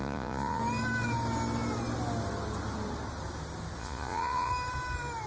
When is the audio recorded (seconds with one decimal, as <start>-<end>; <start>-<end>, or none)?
0.6-3.8; 4.5-5.3